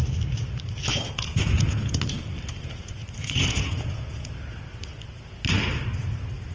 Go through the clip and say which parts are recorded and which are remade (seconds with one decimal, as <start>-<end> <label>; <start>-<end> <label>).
0.0-0.9 recorded; 0.9-2.0 remade; 2.0-3.2 recorded; 3.2-4.3 remade; 4.3-6.5 recorded